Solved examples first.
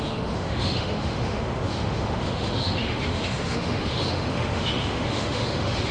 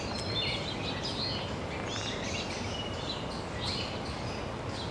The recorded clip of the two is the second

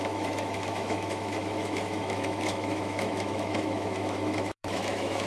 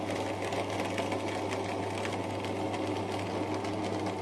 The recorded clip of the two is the second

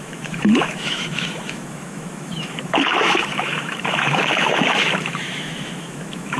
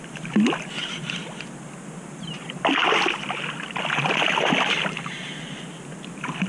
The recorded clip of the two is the second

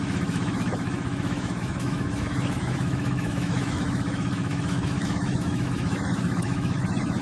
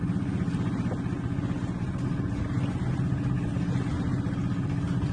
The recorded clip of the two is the second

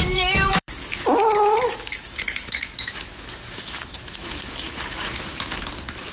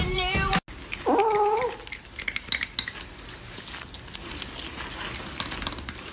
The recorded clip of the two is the second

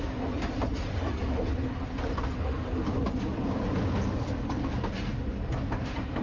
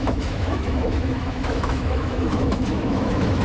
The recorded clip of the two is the first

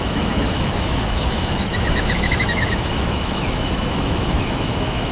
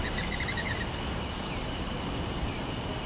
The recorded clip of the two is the second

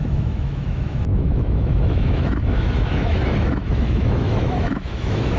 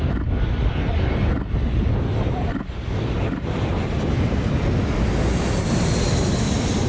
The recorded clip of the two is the second